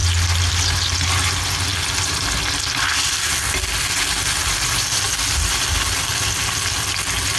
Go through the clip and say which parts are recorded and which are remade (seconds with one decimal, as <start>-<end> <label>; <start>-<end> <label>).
0.0-7.4 recorded